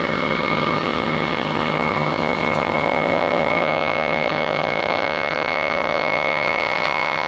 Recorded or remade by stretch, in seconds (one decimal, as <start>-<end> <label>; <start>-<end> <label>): 0.0-7.3 remade